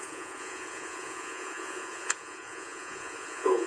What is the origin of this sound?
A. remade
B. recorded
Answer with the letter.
A